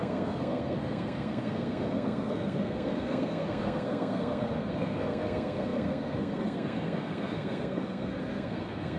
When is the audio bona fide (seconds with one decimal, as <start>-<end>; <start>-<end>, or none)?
none